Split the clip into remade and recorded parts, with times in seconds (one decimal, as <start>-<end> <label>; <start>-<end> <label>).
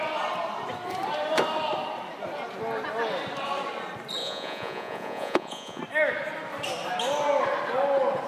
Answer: 0.0-4.2 recorded; 4.2-5.8 remade; 5.8-8.3 recorded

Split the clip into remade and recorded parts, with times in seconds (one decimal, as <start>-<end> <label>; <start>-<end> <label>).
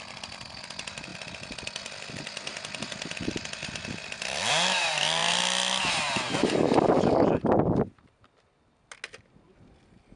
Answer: 0.0-10.2 recorded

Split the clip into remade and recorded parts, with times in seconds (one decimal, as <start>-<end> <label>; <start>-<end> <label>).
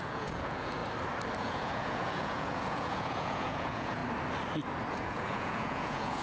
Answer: 0.0-0.8 remade; 0.8-1.4 recorded; 1.4-4.0 remade; 4.0-4.9 recorded; 4.9-6.2 remade